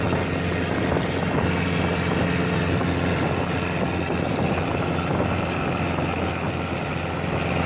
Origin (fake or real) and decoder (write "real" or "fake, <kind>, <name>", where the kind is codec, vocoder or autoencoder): real